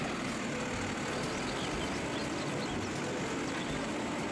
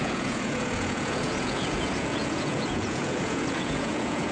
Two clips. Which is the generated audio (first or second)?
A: second